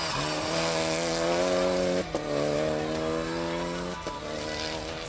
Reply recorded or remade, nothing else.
recorded